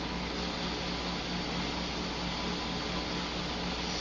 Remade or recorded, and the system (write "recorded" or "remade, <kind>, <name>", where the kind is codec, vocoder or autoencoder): recorded